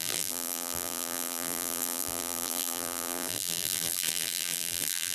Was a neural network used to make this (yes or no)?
yes